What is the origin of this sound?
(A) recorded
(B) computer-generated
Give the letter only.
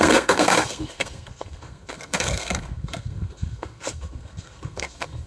B